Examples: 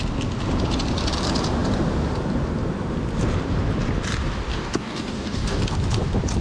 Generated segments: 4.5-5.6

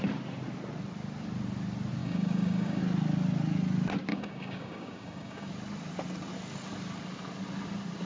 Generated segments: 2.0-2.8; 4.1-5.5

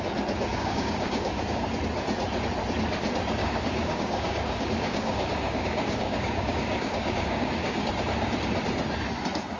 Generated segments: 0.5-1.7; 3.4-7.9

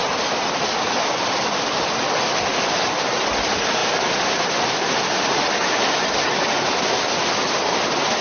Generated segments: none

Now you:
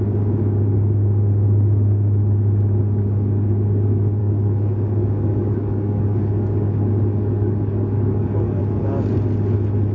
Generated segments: 4.2-8.6

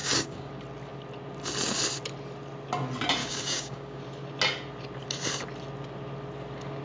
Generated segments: 0.0-0.5; 3.2-4.0